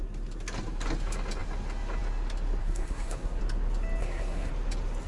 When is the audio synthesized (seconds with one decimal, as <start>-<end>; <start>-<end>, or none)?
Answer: 2.6-3.4; 4.0-4.5